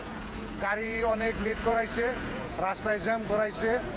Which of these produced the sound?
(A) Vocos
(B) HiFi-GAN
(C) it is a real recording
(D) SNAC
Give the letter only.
A